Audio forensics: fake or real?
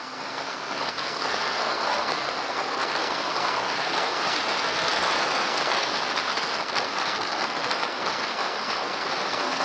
fake